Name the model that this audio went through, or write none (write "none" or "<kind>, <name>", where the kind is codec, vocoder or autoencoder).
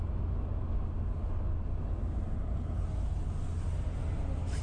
none